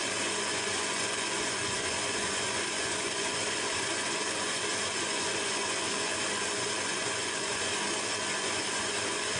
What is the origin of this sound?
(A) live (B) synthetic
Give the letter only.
B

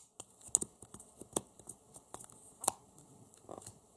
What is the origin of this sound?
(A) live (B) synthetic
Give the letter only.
A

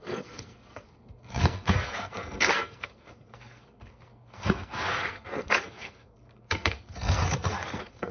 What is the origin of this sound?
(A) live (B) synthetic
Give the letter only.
B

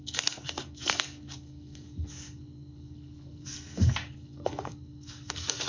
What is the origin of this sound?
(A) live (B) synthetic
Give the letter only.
B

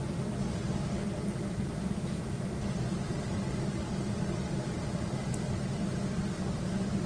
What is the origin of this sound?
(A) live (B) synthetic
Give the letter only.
A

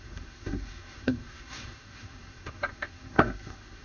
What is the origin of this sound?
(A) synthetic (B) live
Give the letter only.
A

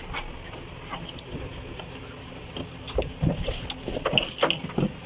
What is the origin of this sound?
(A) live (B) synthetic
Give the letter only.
A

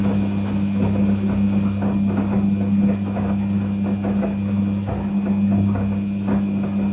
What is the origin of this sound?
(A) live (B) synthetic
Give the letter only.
A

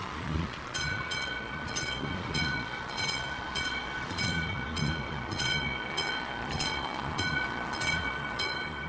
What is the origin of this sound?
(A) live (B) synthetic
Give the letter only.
B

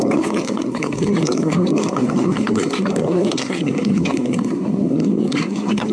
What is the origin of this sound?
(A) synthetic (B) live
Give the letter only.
A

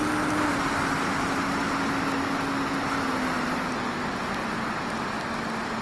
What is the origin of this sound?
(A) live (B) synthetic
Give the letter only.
A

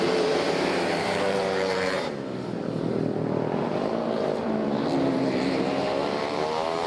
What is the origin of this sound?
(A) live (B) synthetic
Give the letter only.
B